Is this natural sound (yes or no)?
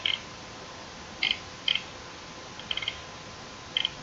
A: yes